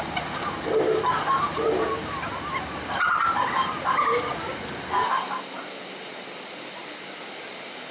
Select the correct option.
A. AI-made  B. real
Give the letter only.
B